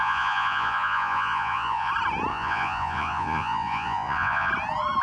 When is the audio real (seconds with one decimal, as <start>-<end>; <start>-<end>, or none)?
1.9-2.3; 4.5-5.0